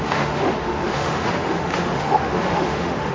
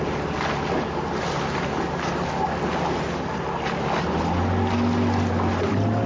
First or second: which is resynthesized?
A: first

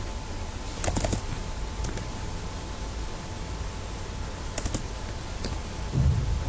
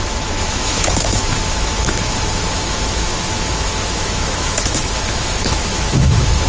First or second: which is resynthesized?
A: second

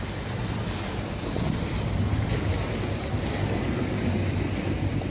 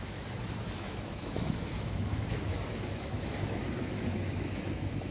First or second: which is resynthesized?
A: second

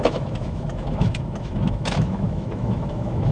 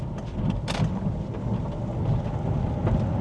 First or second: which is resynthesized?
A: first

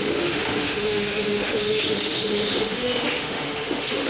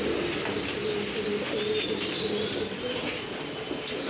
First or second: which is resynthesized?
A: first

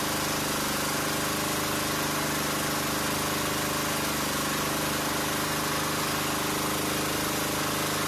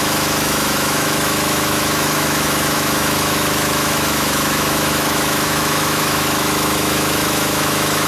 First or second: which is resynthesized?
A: second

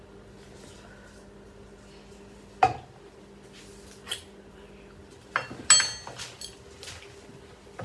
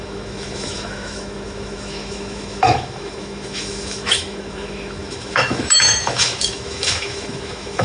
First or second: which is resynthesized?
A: second